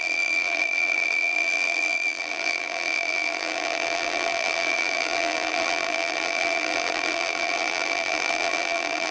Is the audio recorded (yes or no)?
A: no